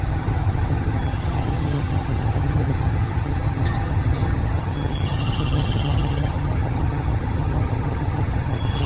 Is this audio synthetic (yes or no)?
yes